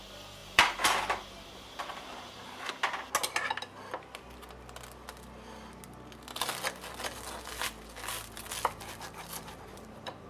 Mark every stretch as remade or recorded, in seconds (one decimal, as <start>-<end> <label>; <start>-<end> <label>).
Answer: 0.0-0.4 recorded; 0.4-2.7 remade; 2.7-9.5 recorded; 9.5-10.3 remade